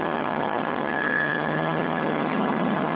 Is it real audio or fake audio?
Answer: fake